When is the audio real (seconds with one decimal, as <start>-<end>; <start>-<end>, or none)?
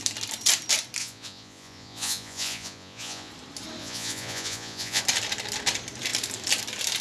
0.0-1.0; 3.3-3.8; 5.0-7.0